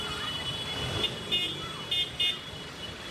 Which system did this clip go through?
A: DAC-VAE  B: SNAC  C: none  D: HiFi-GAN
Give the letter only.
C